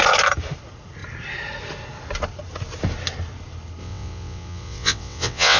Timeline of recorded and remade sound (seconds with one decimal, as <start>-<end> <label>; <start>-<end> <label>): 0.0-3.8 recorded; 3.8-5.6 remade